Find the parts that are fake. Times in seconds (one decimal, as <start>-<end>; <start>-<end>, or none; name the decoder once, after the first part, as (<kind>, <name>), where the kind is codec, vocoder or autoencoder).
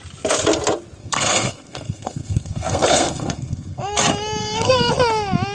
1.0-3.8 (codec, SNAC); 4.4-4.9